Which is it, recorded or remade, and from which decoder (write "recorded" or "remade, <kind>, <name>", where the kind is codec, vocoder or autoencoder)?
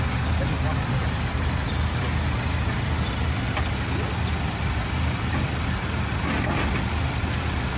recorded